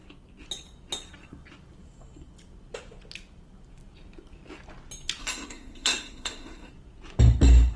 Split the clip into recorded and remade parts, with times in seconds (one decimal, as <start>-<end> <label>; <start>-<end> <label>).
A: 0.0-5.2 recorded; 5.2-6.7 remade; 6.7-7.8 recorded